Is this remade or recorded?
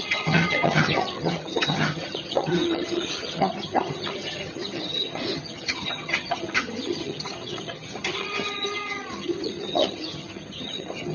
remade